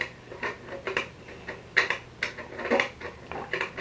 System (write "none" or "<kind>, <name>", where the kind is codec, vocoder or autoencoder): none